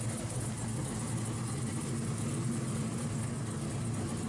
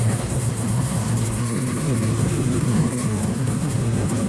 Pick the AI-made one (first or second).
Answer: second